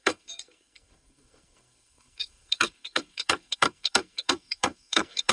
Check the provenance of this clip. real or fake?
fake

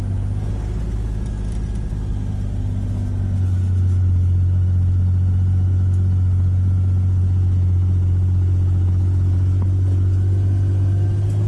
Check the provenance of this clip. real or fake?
real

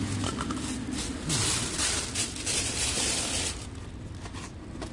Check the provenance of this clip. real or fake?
real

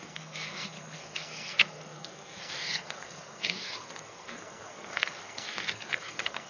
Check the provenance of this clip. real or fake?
fake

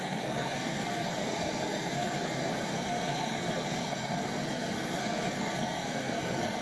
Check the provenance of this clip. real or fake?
fake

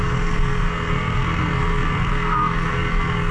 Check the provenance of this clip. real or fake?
fake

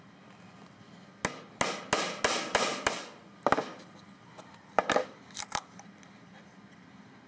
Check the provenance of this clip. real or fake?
real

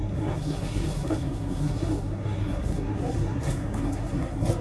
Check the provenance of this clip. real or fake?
fake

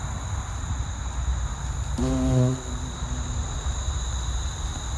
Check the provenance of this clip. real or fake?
real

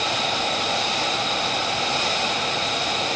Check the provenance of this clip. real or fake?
real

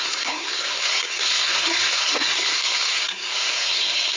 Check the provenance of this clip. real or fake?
fake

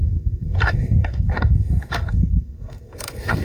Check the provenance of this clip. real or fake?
fake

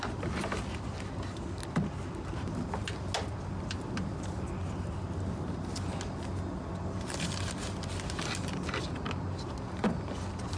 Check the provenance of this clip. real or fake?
real